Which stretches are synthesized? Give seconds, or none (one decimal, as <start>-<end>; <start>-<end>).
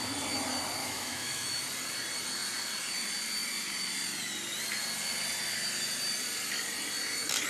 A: 0.8-1.6